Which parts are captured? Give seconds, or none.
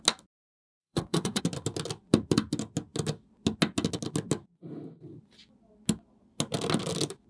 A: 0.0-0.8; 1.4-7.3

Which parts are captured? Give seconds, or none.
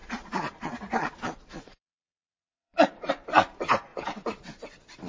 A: 3.1-3.9; 4.5-5.1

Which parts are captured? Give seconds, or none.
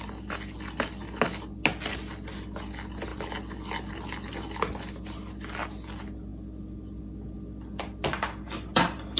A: 0.0-9.2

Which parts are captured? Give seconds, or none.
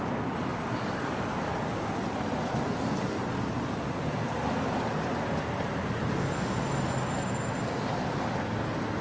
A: 0.0-0.5; 1.7-9.0